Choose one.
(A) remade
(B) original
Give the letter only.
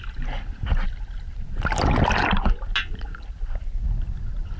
B